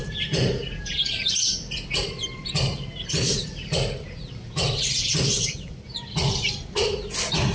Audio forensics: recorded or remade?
remade